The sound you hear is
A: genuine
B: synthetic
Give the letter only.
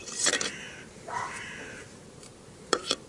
B